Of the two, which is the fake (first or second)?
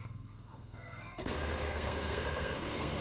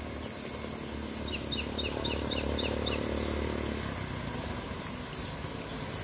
first